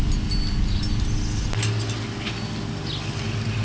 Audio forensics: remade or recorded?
recorded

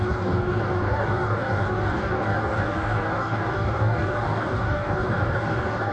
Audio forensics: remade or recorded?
remade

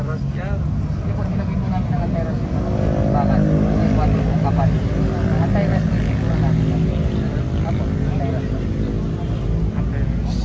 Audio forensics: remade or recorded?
recorded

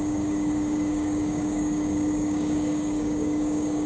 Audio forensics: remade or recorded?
remade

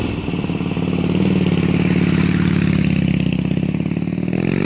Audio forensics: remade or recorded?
recorded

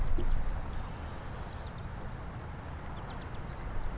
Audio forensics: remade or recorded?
recorded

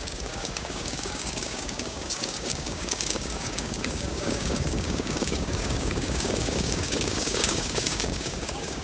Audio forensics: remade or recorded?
remade